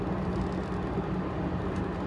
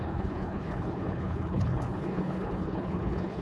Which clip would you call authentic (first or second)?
first